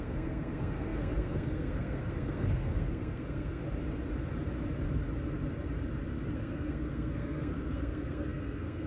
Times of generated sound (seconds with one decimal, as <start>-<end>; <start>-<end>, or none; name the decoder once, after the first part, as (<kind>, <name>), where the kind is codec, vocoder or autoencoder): 0.0-3.6 (codec, SNAC); 6.3-8.9